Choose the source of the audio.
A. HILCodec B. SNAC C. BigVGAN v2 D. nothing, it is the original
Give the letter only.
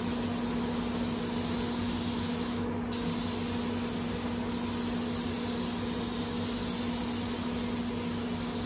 D